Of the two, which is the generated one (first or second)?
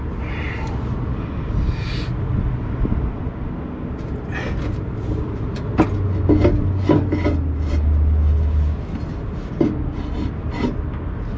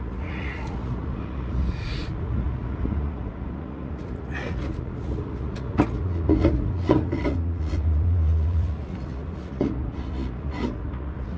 second